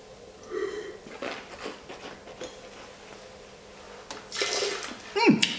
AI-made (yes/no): no